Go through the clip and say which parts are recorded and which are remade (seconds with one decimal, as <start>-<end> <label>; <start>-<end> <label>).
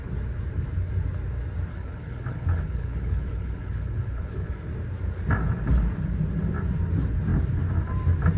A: 0.0-1.7 recorded; 1.7-4.7 remade; 4.7-8.4 recorded